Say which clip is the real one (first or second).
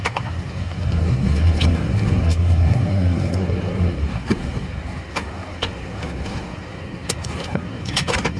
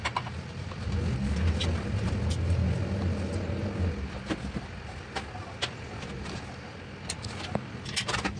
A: second